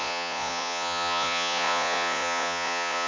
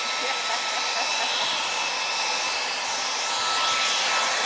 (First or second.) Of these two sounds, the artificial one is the first